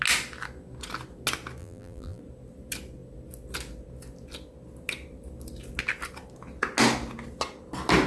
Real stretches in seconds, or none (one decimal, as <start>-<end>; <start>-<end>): 0.0-1.6; 2.2-8.1